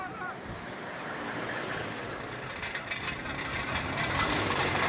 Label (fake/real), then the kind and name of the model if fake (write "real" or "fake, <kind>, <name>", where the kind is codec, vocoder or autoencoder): fake, vocoder, BigVGAN v2